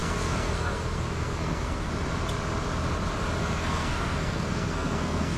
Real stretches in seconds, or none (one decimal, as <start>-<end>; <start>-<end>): 1.9-3.4